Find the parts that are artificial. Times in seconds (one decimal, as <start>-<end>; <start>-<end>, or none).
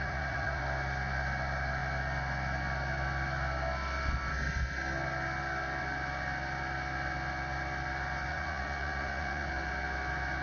0.0-0.6; 8.3-9.5